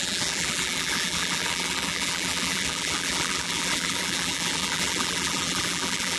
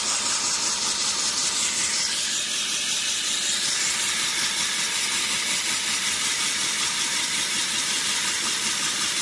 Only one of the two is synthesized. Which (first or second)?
first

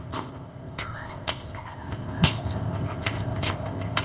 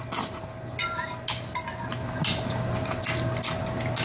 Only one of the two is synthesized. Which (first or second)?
first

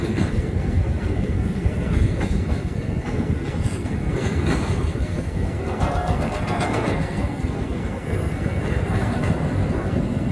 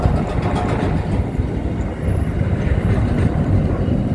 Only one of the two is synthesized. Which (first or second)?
first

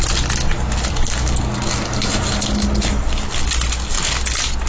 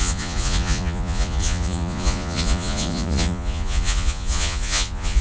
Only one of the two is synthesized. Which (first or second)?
second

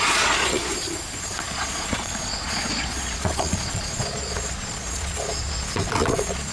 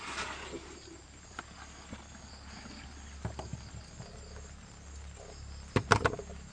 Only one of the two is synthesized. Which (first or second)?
first